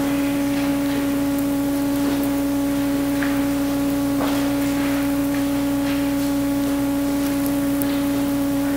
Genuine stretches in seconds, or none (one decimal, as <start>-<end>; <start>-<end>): 0.0-8.8